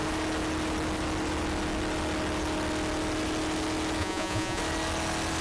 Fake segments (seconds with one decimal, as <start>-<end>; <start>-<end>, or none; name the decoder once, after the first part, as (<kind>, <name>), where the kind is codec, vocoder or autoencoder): 4.0-4.6 (vocoder, Vocos)